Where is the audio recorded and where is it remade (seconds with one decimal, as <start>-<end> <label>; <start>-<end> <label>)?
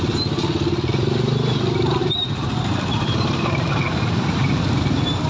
0.0-2.0 recorded; 2.0-4.8 remade; 4.8-5.3 recorded